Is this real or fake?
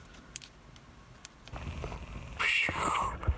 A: fake